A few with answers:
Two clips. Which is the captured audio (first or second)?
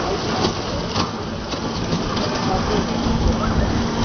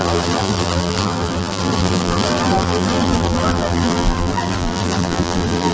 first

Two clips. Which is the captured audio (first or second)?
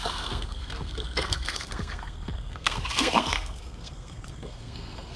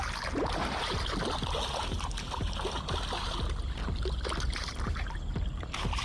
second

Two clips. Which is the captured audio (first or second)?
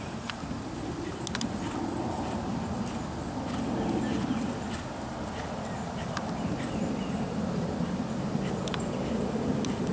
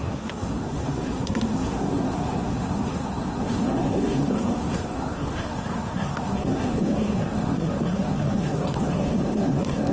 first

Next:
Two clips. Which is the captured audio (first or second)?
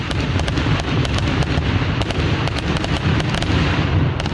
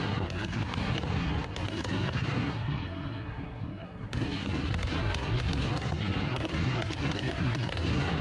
first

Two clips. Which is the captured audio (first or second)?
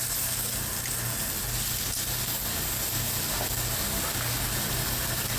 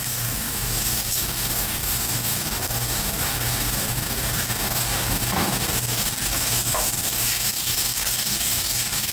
first